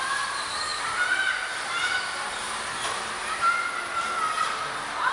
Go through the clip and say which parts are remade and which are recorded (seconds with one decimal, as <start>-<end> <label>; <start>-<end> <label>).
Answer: 0.0-5.1 recorded